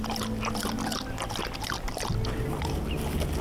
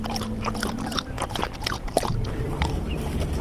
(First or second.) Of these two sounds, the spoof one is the second